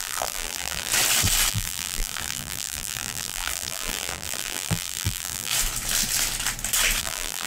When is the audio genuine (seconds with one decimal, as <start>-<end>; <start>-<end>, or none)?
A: 0.9-1.5; 5.5-7.0